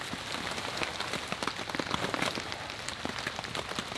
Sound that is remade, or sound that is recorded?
recorded